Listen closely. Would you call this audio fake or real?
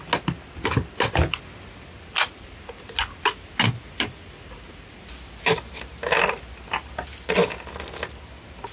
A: real